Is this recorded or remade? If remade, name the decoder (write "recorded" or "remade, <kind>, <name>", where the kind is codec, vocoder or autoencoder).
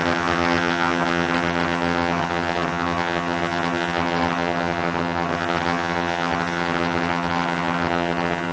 remade, vocoder, HiFi-GAN